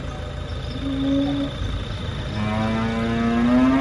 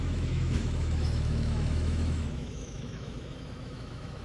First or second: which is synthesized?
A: second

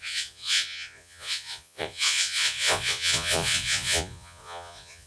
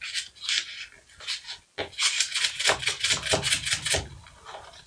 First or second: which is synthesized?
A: first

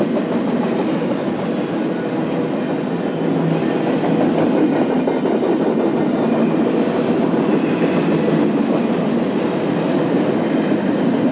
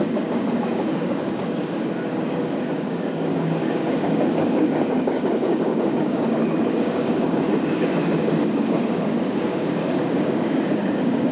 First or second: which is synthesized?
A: second